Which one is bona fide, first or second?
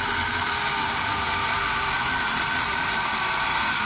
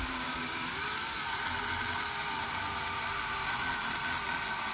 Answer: second